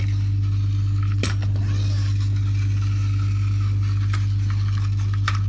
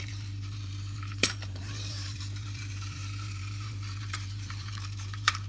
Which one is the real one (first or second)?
first